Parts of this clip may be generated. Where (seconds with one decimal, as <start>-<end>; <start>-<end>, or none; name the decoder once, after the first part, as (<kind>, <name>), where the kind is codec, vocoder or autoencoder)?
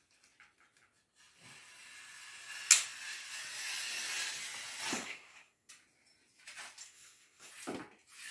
4.9-5.7 (codec, SNAC); 6.8-7.5